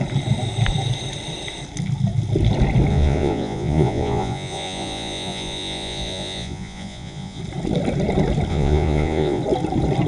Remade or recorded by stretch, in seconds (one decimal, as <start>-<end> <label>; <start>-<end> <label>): 0.0-2.9 recorded; 2.9-7.4 remade; 7.4-8.5 recorded; 8.5-9.4 remade; 9.4-10.1 recorded